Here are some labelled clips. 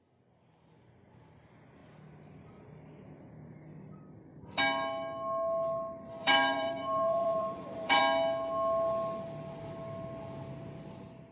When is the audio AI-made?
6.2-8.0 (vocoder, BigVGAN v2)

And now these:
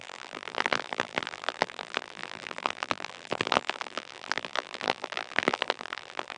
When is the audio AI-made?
0.0-6.4 (vocoder, BigVGAN v2)

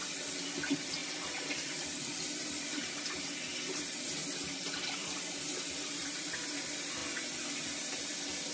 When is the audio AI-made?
0.0-1.0 (vocoder, BigVGAN v2); 1.5-7.0

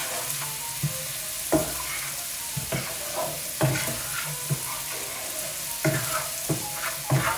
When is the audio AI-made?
none

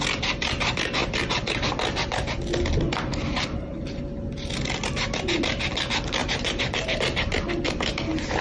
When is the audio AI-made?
6.2-7.0 (vocoder, BigVGAN v2)

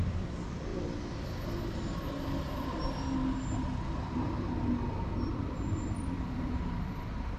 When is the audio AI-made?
0.0-0.7 (vocoder, BigVGAN v2); 5.1-7.4

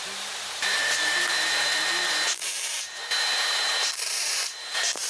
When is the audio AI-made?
0.0-2.5 (vocoder, BigVGAN v2); 3.0-5.1